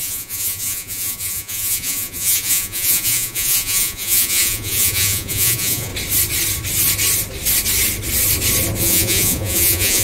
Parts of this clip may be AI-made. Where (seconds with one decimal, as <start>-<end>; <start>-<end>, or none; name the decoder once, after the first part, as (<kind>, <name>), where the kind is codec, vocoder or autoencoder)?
0.0-5.9 (vocoder, Vocos); 8.8-10.0

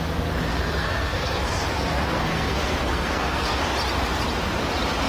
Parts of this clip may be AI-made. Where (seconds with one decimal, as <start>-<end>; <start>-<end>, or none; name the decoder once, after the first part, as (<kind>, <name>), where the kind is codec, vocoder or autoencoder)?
0.5-3.6 (codec, SNAC)